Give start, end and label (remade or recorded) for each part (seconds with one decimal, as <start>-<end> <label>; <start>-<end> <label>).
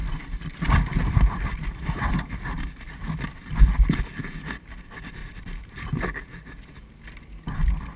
0.0-5.2 recorded; 5.2-5.8 remade; 5.8-8.0 recorded